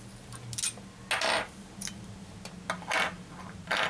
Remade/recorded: recorded